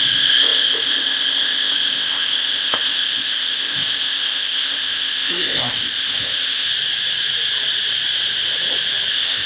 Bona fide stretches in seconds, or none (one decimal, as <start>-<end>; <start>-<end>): 6.7-9.1